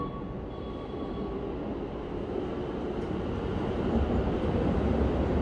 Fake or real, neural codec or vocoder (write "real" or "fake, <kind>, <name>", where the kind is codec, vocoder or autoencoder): real